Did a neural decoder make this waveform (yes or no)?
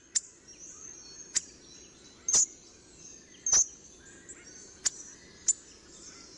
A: no